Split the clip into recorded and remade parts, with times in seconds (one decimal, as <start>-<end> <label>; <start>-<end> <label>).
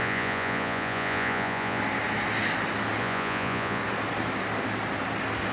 0.0-1.8 remade; 1.8-3.0 recorded; 3.0-3.8 remade; 3.8-5.5 recorded